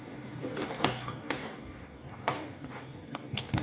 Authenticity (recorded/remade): remade